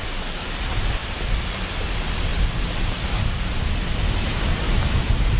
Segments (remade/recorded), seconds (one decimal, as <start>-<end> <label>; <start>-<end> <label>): 0.0-1.0 recorded; 1.0-1.6 remade; 1.6-2.3 recorded; 2.3-4.8 remade; 4.8-5.4 recorded